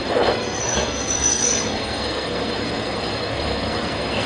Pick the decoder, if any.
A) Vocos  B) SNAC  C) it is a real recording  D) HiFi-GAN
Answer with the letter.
B